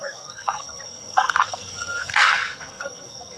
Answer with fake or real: fake